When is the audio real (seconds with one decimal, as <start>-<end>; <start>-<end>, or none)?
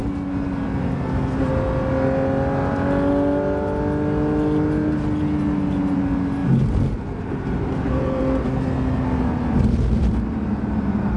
0.0-6.4; 8.2-11.2